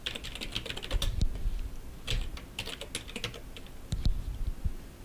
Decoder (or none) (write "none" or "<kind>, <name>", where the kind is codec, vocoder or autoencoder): none